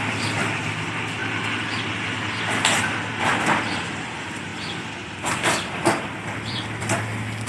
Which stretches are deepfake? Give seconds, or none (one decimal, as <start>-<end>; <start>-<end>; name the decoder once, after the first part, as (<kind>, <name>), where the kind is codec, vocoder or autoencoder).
0.0-1.2 (vocoder, BigVGAN v2); 3.2-4.5; 5.8-7.5